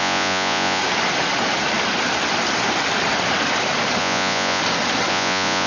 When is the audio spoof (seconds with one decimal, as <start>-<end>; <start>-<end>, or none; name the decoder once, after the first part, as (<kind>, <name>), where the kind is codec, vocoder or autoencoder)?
0.0-0.8 (vocoder, Vocos); 4.0-4.6; 5.1-5.7